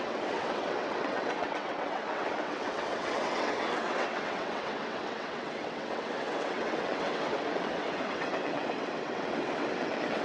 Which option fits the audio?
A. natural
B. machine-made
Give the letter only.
B